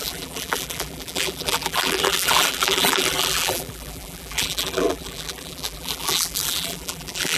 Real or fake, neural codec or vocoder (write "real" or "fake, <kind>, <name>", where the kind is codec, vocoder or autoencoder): fake, vocoder, BigVGAN v2